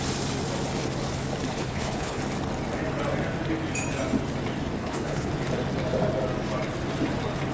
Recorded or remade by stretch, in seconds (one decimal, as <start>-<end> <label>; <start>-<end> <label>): 0.0-1.6 recorded; 1.6-2.2 remade; 2.2-4.8 recorded; 4.8-5.3 remade; 5.3-7.5 recorded